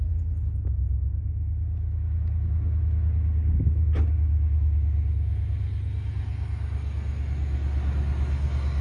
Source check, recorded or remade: recorded